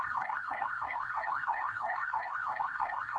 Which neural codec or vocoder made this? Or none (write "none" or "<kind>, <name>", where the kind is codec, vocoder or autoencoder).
codec, SNAC